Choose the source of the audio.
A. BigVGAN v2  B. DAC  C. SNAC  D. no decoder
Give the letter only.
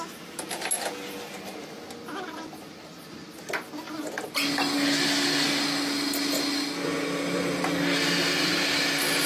D